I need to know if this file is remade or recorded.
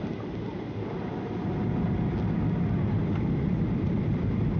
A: recorded